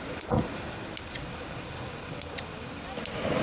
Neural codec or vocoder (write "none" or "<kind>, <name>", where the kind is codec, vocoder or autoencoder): none